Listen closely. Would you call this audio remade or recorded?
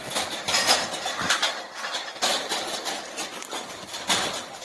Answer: recorded